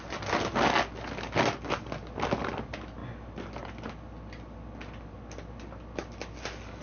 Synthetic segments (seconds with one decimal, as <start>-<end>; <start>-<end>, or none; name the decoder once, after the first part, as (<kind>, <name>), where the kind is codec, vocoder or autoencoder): none